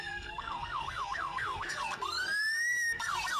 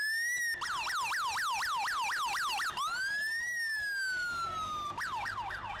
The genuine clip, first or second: second